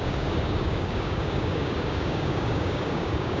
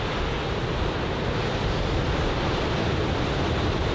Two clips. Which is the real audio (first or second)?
second